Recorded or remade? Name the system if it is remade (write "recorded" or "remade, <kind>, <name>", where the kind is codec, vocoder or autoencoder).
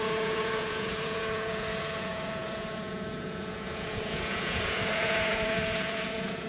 remade, vocoder, Vocos